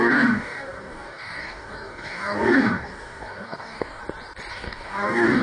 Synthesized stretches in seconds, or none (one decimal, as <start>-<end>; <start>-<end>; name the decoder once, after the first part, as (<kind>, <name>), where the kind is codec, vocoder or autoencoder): 0.0-4.0 (codec, DAC); 4.5-5.4